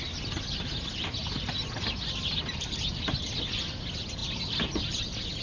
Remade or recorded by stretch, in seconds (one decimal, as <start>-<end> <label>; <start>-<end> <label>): 0.0-4.2 recorded; 4.2-5.0 remade; 5.0-5.4 recorded